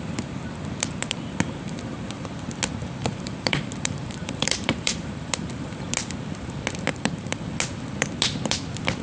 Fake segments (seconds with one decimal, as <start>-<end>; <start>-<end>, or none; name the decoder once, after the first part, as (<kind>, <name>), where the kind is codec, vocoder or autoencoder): 3.0-5.8 (vocoder, BigVGAN v2); 6.9-7.4